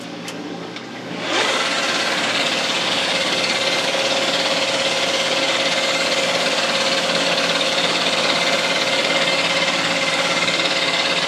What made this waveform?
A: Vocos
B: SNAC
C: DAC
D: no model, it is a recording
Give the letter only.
C